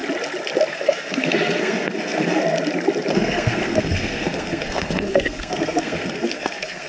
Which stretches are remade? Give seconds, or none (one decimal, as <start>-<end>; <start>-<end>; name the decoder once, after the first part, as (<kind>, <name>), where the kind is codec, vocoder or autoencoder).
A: 0.7-2.4 (codec, SNAC); 3.1-6.9